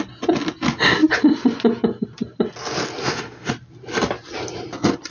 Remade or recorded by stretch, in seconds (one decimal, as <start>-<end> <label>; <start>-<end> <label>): 0.0-3.0 recorded; 3.0-3.5 remade; 3.5-5.1 recorded